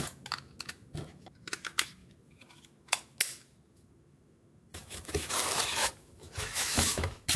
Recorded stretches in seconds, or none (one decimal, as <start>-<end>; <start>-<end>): none